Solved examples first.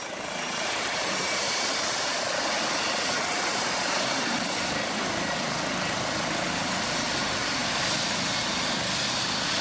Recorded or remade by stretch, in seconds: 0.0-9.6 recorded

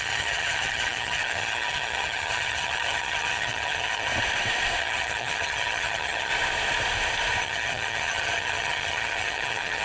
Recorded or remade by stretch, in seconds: 0.0-4.1 remade; 4.1-4.8 recorded; 4.8-6.3 remade; 6.3-7.4 recorded; 7.4-9.8 remade

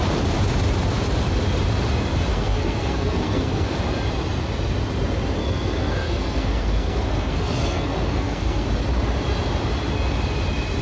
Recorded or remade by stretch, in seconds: 0.0-2.3 recorded; 2.3-3.8 remade; 3.8-5.4 recorded; 5.4-8.7 remade; 8.7-10.8 recorded

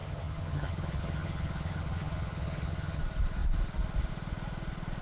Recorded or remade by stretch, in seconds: 0.0-3.0 remade; 3.0-5.0 recorded

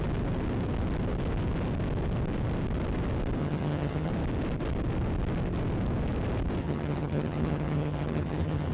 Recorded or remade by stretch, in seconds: 0.0-3.4 recorded; 3.4-4.1 remade; 4.1-6.6 recorded; 6.6-8.7 remade

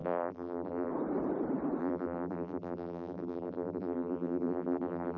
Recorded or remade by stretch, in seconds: 0.0-0.9 remade; 0.9-1.8 recorded; 1.8-5.2 remade

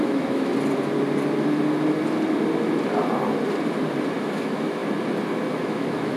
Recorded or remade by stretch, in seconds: 0.0-0.5 remade; 0.5-4.2 recorded; 4.2-4.8 remade; 4.8-5.5 recorded; 5.5-6.2 remade

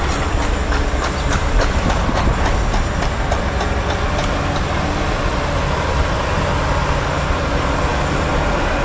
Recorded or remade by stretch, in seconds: 0.0-8.8 recorded